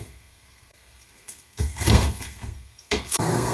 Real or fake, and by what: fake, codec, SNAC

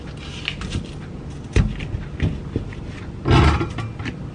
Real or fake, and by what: real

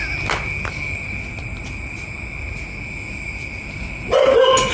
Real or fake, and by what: real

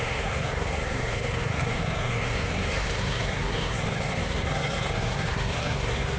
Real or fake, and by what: fake, codec, SNAC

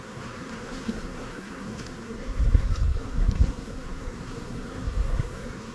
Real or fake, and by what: fake, codec, SNAC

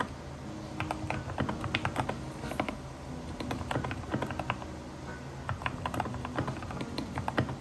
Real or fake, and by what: real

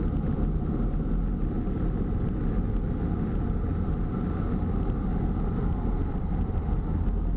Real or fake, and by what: real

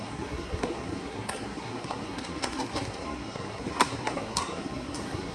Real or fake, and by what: fake, codec, SNAC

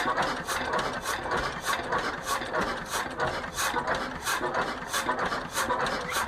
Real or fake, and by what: real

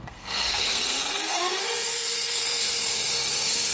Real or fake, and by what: fake, codec, SNAC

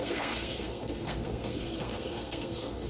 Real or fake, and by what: fake, codec, SNAC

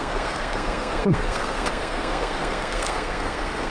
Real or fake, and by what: fake, codec, SNAC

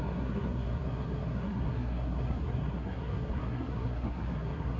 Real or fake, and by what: fake, codec, SNAC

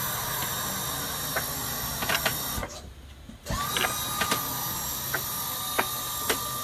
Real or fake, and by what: real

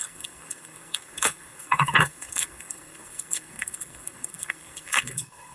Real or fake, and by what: fake, codec, SNAC